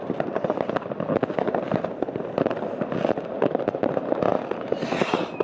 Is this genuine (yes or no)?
yes